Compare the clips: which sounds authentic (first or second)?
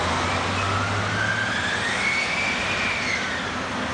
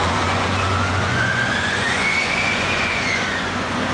first